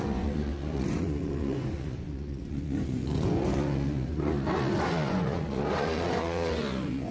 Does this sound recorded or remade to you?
remade